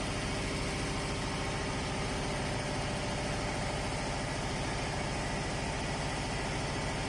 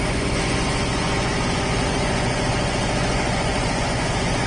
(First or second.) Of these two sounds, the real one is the first